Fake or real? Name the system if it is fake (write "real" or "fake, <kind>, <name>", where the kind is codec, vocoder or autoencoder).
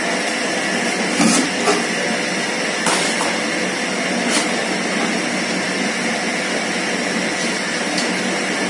real